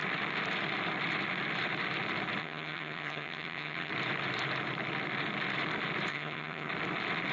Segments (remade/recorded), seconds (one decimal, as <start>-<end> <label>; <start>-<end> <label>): 0.0-2.4 recorded; 2.4-3.9 remade; 3.9-6.1 recorded; 6.1-6.7 remade; 6.7-7.3 recorded